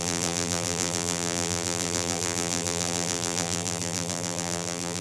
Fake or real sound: fake